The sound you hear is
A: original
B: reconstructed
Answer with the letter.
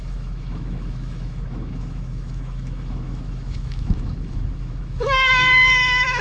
B